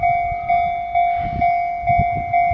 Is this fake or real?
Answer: real